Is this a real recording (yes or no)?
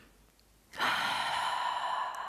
yes